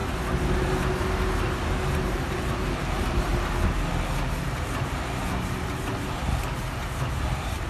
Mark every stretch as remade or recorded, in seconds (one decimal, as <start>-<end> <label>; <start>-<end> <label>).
0.0-2.0 recorded; 2.0-3.3 remade; 3.3-4.4 recorded; 4.4-7.7 remade